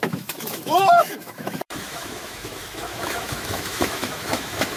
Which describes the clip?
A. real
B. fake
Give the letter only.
B